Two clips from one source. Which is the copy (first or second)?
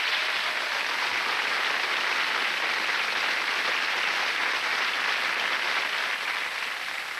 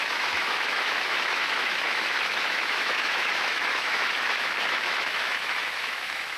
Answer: second